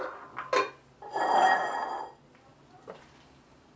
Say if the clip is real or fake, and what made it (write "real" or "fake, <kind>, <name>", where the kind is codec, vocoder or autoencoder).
real